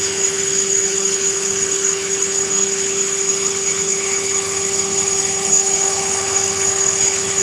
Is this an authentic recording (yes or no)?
no